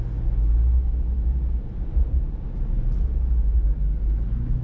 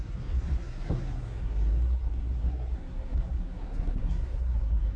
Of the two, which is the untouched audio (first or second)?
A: first